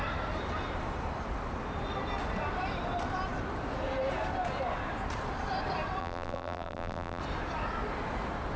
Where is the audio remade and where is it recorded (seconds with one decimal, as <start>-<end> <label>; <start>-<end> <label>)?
0.0-6.0 recorded; 6.0-7.2 remade; 7.2-8.6 recorded